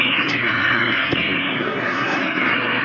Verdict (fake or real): fake